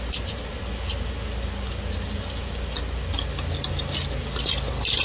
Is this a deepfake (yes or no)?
no